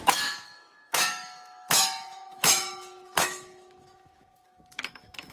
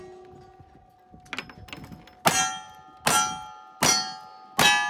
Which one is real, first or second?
second